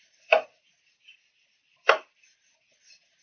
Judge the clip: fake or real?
real